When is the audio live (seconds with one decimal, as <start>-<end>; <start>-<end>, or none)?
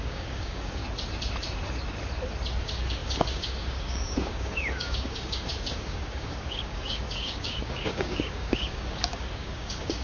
0.8-2.6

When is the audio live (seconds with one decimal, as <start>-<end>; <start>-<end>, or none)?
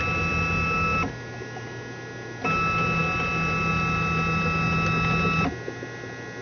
0.0-6.4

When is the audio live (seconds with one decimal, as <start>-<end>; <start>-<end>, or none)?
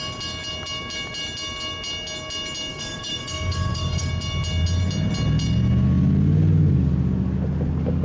0.0-2.7; 4.1-8.0